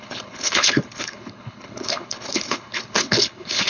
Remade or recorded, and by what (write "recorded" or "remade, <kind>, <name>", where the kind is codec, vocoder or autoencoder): remade, codec, HILCodec